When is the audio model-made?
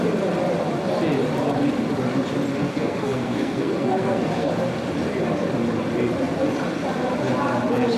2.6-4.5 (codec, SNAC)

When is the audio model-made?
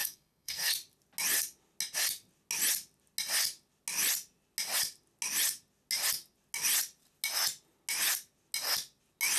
0.0-0.7 (codec, SNAC)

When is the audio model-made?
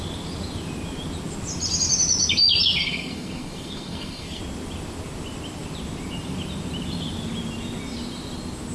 2.8-4.4 (codec, SNAC)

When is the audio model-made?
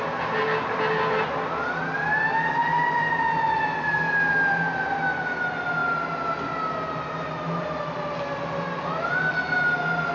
none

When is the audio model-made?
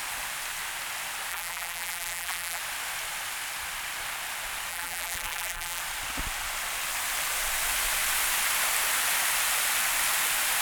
1.3-2.6 (vocoder, BigVGAN v2); 4.7-5.8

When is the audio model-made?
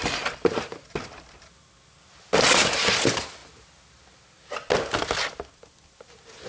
none